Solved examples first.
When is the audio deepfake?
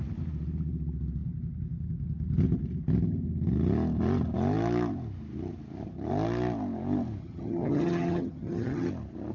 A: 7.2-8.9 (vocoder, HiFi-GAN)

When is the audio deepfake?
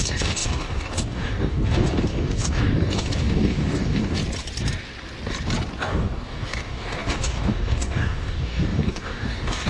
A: 0.0-4.2 (codec, DAC); 5.8-9.7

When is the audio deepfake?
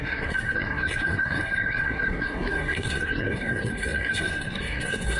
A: 0.0-5.2 (codec, SNAC)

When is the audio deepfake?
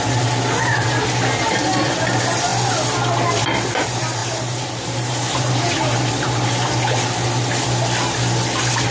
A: 4.2-6.1 (vocoder, BigVGAN v2)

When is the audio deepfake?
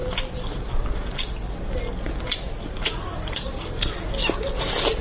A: none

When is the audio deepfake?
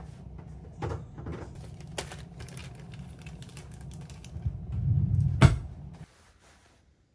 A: none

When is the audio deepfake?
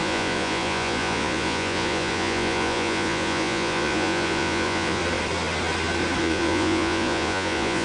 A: 0.0-5.0 (vocoder, Vocos); 6.2-7.8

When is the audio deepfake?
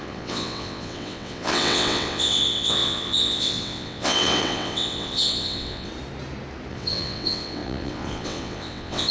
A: 0.0-5.9 (vocoder, WaveNeXt); 6.7-9.1